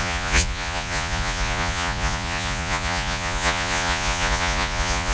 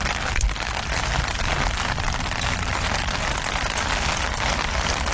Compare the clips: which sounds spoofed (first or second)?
first